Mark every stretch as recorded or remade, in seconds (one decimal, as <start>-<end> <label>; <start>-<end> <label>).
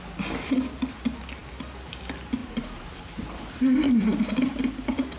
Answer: 0.0-2.4 recorded; 2.4-3.9 remade; 3.9-5.2 recorded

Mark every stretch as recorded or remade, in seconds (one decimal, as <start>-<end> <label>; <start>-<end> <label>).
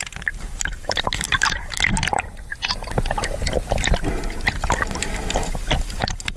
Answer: 0.0-2.5 remade; 2.5-5.8 recorded; 5.8-6.4 remade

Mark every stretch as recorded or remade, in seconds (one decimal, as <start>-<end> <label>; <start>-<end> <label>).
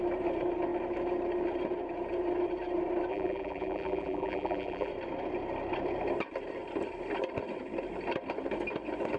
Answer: 0.0-3.1 recorded; 3.1-4.9 remade; 4.9-9.2 recorded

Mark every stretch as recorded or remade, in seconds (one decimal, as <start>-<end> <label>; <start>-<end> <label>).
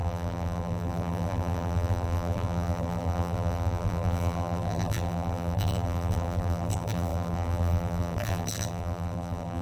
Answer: 0.0-9.6 remade